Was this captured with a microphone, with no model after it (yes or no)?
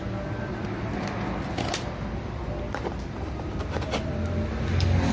yes